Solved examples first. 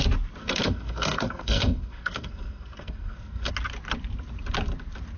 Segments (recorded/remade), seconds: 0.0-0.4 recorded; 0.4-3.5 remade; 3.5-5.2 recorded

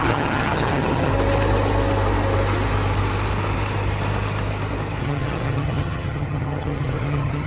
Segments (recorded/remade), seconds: 0.0-1.1 remade; 1.1-5.0 recorded; 5.0-7.5 remade

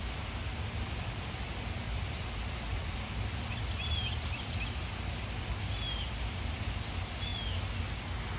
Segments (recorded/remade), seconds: 0.0-8.4 recorded

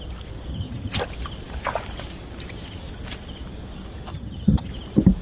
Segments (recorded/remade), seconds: 0.0-0.5 recorded; 0.5-1.0 remade; 1.0-4.1 recorded; 4.1-4.7 remade; 4.7-5.2 recorded

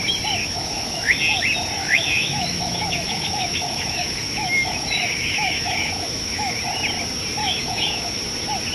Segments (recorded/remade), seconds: 0.0-0.4 recorded; 0.4-1.2 remade; 1.2-1.8 recorded; 1.8-6.6 remade; 6.6-7.4 recorded; 7.4-8.2 remade; 8.2-8.7 recorded

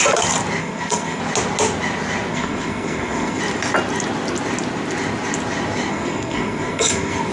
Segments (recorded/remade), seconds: 0.0-0.6 recorded; 0.6-1.2 remade; 1.2-2.3 recorded; 2.3-3.4 remade; 3.4-5.9 recorded; 5.9-7.3 remade

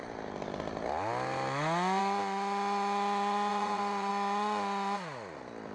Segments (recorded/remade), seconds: 0.0-3.5 recorded; 3.5-4.1 remade; 4.1-5.7 recorded

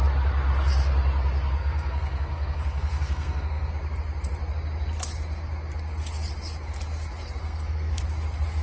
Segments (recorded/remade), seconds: 0.0-1.6 recorded; 1.6-3.7 remade; 3.7-7.4 recorded; 7.4-8.0 remade; 8.0-8.6 recorded